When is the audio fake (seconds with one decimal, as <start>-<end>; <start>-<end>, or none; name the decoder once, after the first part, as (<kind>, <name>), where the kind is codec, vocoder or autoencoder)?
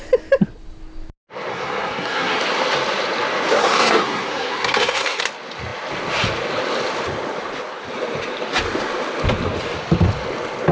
1.5-2.4 (codec, SNAC); 3.6-5.2